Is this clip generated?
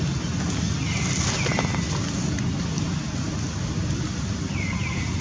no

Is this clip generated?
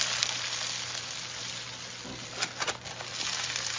no